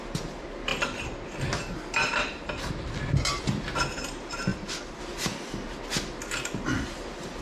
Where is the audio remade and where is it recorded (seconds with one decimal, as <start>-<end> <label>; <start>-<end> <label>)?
0.0-4.5 recorded; 4.5-5.0 remade; 5.0-7.4 recorded